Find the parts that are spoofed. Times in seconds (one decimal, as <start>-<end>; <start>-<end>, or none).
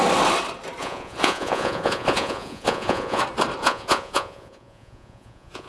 0.8-3.2; 3.6-5.7